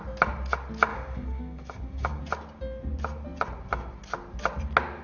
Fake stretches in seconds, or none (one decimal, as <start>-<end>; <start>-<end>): 0.9-2.2